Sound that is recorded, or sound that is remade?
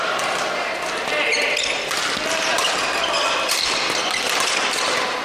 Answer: recorded